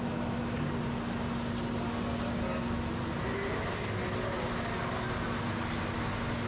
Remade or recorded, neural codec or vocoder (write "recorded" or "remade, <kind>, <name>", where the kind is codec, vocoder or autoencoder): recorded